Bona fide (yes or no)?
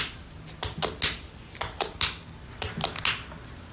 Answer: yes